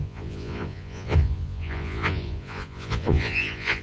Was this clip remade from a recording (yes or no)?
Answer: yes